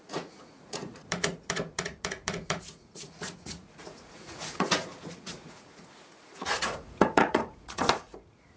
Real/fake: fake